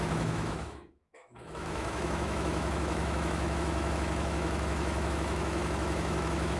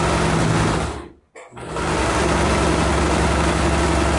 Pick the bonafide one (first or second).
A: second